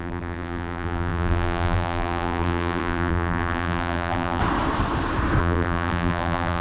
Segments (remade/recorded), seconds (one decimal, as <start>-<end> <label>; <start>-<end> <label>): 0.0-4.4 remade; 4.4-5.4 recorded; 5.4-6.6 remade